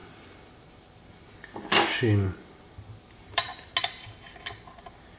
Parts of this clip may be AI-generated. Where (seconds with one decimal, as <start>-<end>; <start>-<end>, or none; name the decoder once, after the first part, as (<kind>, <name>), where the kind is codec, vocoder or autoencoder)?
3.0-3.5 (vocoder, BigVGAN v2); 4.7-5.2